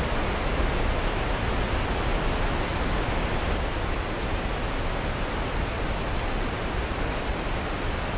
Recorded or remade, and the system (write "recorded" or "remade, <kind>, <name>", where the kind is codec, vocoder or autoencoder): recorded